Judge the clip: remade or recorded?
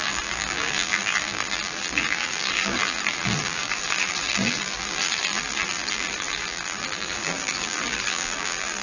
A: remade